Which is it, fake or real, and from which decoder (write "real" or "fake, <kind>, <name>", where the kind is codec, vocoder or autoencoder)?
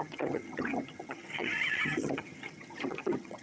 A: fake, vocoder, HiFi-GAN